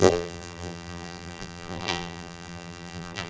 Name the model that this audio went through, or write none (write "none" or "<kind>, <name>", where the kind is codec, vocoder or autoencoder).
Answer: vocoder, BigVGAN v2